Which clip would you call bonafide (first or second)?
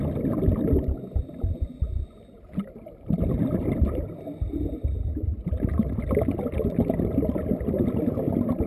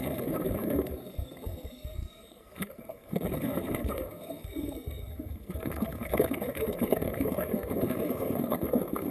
first